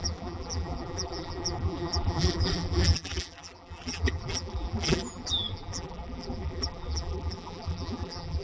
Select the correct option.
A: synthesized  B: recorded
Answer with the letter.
A